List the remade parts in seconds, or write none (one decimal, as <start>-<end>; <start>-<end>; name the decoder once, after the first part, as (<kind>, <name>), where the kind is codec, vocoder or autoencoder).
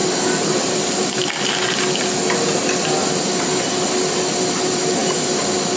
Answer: none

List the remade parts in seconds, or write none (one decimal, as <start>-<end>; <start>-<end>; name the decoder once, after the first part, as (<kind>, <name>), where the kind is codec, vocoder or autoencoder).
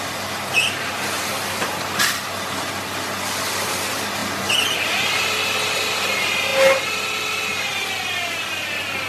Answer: none